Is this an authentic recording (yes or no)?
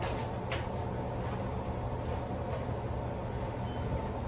yes